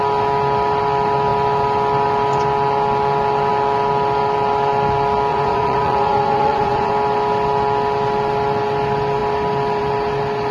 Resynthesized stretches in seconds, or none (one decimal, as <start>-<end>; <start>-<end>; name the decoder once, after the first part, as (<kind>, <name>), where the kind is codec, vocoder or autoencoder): 5.3-6.9 (vocoder, Vocos)